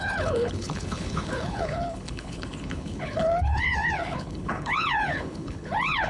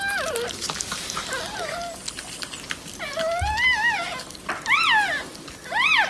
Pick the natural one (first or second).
second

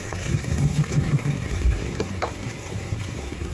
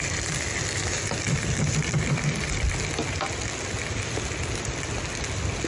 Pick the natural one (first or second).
second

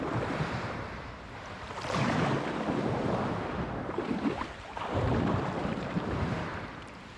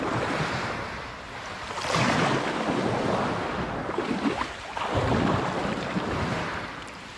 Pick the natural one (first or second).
second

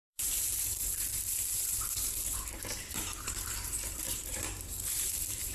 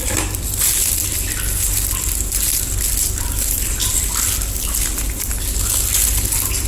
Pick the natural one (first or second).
second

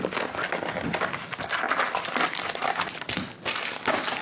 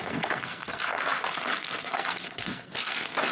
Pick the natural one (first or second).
first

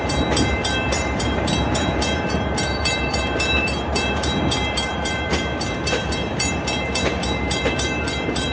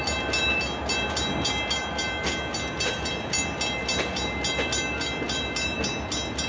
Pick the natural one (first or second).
second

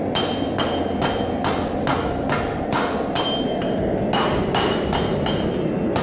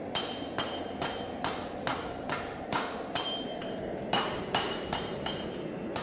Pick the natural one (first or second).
first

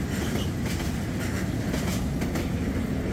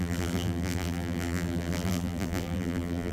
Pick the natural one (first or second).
first